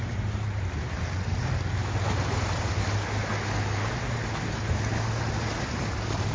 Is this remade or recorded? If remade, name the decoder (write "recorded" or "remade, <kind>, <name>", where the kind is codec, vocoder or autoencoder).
recorded